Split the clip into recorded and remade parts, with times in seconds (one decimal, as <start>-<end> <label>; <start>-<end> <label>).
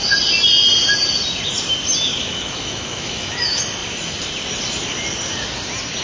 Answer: 0.0-2.1 recorded; 2.1-3.4 remade; 3.4-6.0 recorded